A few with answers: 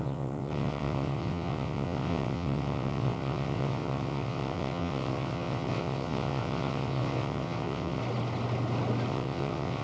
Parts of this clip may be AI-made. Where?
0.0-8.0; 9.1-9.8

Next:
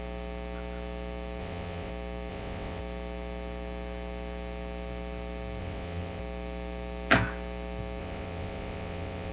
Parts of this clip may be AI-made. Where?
1.4-1.9; 2.3-2.8; 5.6-6.2; 8.0-9.3

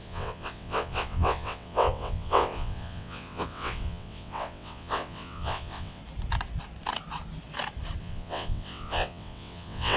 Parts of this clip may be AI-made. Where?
0.0-6.0; 8.0-10.0

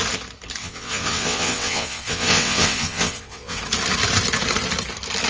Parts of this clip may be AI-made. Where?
0.6-3.6